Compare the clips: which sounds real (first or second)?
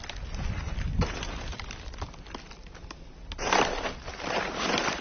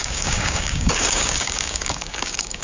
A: first